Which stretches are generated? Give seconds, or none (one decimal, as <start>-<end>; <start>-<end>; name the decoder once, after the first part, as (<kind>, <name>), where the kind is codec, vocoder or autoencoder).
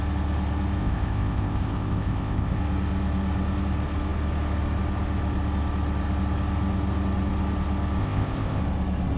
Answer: 0.8-2.6 (codec, ZipCodec); 8.0-8.6